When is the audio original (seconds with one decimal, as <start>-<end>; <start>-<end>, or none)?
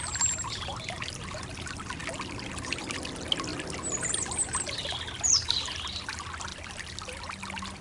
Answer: 0.0-7.8